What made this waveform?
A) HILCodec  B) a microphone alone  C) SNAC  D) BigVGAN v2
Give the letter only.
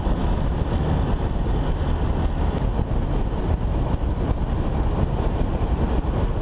B